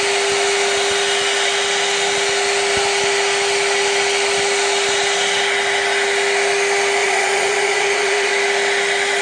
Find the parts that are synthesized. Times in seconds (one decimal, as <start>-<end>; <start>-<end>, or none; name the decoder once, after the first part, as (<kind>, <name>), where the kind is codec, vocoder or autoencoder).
7.0-8.3 (vocoder, Vocos)